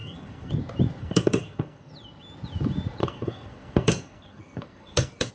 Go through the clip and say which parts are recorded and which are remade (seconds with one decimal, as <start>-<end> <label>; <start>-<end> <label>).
0.0-0.5 remade; 0.5-1.0 recorded; 1.0-1.9 remade; 1.9-3.0 recorded; 3.0-5.3 remade

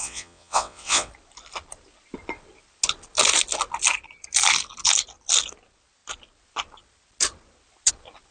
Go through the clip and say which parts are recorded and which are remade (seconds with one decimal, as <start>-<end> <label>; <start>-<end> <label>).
0.0-1.1 remade; 1.1-8.3 recorded

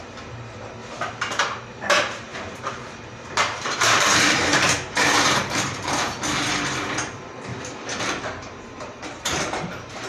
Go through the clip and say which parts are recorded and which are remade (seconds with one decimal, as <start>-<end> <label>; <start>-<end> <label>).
0.0-0.8 remade; 0.8-1.4 recorded; 1.4-7.5 remade; 7.5-8.3 recorded; 8.3-10.1 remade

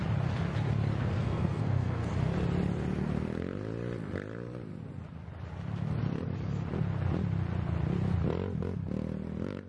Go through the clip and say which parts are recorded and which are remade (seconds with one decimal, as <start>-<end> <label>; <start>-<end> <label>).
0.0-1.0 recorded; 1.0-2.1 remade; 2.1-9.7 recorded

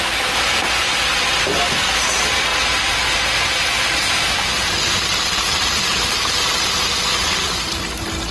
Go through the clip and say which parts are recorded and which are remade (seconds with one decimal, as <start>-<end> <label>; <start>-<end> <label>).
0.0-8.3 recorded

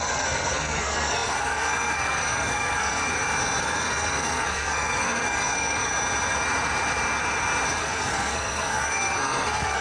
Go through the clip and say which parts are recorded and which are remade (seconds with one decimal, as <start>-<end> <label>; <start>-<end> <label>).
0.0-3.1 remade; 3.1-3.6 recorded; 3.6-5.9 remade; 5.9-7.8 recorded; 7.8-9.8 remade

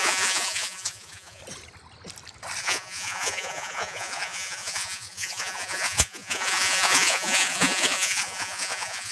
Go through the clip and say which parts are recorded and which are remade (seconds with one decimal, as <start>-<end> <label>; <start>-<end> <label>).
0.0-1.4 remade; 1.4-2.6 recorded; 2.6-9.1 remade

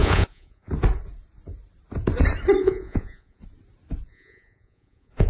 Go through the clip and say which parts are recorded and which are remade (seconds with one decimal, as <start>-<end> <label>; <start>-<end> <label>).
0.0-0.7 remade; 0.7-2.6 recorded; 2.6-3.4 remade; 3.4-4.1 recorded; 4.1-5.3 remade